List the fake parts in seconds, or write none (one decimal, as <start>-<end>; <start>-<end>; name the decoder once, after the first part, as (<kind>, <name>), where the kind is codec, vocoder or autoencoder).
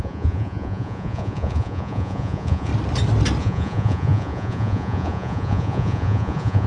0.0-2.7 (vocoder, Vocos); 3.4-6.7